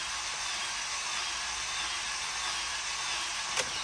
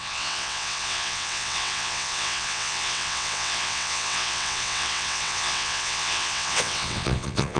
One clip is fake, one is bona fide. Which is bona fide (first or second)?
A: first